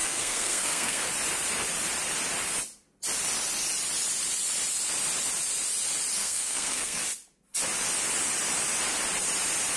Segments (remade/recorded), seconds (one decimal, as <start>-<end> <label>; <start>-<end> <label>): 0.0-1.1 remade; 1.1-6.2 recorded; 6.2-7.0 remade; 7.0-9.8 recorded